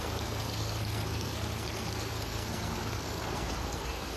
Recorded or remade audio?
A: remade